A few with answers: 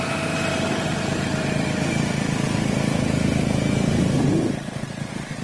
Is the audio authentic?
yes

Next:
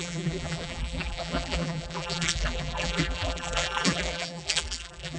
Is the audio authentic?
no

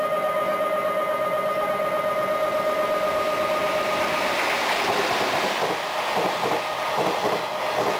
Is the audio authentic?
yes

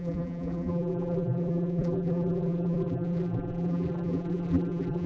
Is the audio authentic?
no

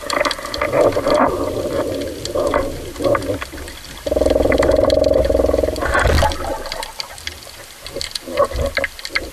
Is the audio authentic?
yes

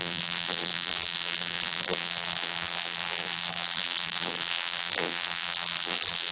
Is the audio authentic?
no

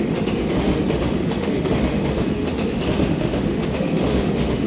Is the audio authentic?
no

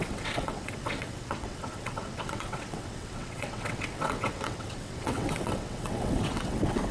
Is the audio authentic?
no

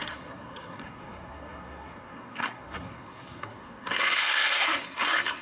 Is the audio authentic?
no